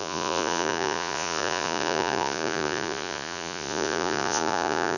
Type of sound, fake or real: fake